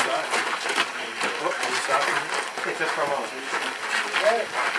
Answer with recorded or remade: recorded